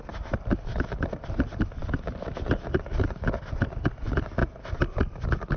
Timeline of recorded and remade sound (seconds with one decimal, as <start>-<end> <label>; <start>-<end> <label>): 0.0-5.6 recorded